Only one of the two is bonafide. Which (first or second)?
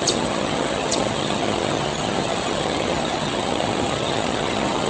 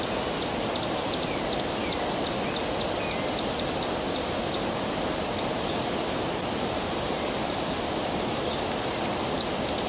second